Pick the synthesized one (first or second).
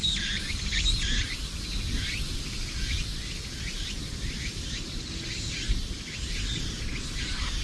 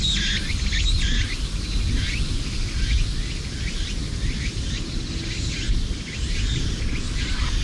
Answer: first